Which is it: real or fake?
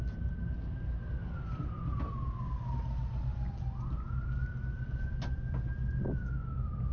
real